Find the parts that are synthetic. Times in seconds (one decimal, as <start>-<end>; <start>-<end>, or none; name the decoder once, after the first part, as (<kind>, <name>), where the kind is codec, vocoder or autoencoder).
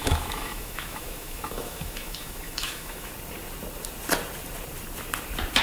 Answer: 0.0-3.1 (autoencoder, DAC-VAE)